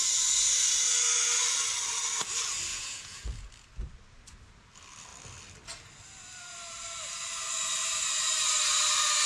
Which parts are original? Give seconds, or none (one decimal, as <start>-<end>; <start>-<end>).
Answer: 0.0-2.7; 3.5-9.3